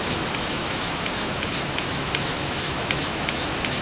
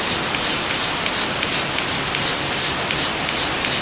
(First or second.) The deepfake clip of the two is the first